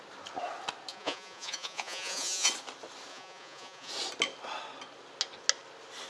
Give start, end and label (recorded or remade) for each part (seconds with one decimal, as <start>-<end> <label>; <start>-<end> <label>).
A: 0.0-0.9 recorded; 0.9-2.5 remade; 2.5-3.1 recorded; 3.1-3.9 remade; 3.9-6.1 recorded